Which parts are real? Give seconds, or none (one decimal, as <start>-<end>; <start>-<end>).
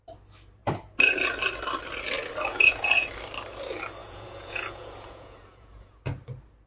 0.0-2.5; 3.1-4.0; 6.0-6.7